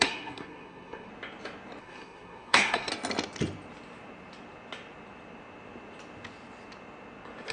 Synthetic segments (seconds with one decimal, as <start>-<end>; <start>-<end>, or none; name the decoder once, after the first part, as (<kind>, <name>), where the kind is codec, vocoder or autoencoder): 0.0-1.1 (codec, SNAC); 1.8-2.9